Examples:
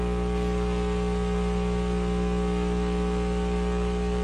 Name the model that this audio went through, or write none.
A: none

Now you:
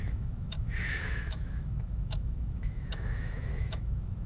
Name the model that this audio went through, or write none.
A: autoencoder, DAC-VAE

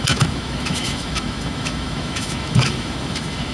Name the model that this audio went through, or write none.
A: autoencoder, DAC-VAE